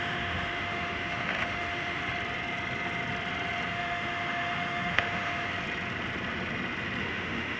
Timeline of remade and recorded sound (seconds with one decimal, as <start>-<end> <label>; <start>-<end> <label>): 0.0-2.0 remade; 2.0-3.7 recorded; 3.7-5.5 remade; 5.5-7.0 recorded; 7.0-7.6 remade